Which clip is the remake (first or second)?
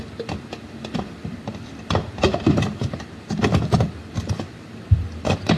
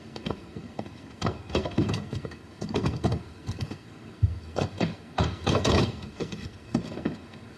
second